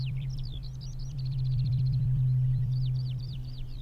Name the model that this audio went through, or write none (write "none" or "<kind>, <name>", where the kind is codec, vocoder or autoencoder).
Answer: vocoder, BigVGAN v2